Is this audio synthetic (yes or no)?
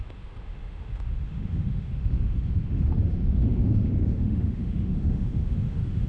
yes